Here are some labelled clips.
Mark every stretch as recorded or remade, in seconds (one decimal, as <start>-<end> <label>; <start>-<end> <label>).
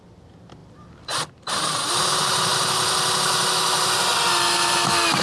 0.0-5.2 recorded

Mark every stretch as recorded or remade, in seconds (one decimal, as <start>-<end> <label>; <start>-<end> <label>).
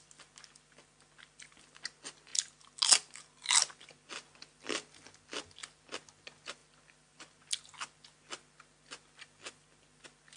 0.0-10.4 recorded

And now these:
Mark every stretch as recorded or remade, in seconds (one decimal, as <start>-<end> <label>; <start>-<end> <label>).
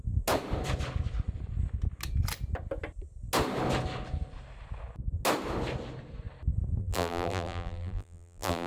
0.0-6.8 recorded; 6.8-8.7 remade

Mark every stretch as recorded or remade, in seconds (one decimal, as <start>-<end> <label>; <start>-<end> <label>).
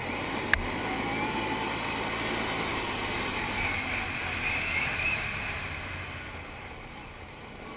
0.0-2.7 recorded; 2.7-3.9 remade; 3.9-7.8 recorded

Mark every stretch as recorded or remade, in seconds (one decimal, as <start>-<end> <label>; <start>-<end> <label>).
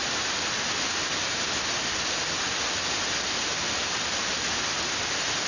0.0-5.5 recorded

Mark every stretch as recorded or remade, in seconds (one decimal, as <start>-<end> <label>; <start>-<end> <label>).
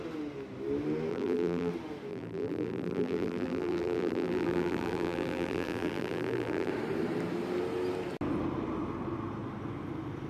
0.0-1.1 recorded; 1.1-1.7 remade; 1.7-2.1 recorded; 2.1-6.7 remade; 6.7-10.3 recorded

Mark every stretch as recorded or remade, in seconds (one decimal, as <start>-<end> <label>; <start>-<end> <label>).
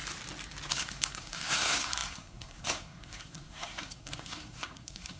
0.0-0.7 recorded; 0.7-5.2 remade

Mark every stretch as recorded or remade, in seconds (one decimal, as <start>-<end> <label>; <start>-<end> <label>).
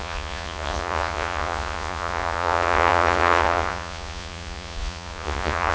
0.0-5.7 remade